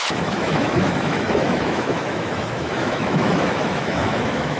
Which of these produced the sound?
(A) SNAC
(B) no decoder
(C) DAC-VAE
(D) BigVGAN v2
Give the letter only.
C